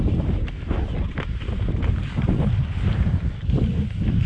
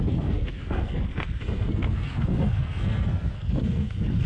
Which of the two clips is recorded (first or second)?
first